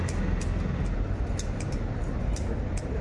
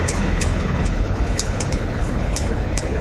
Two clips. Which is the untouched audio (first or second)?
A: first